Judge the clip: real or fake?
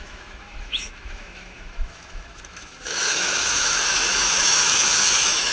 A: fake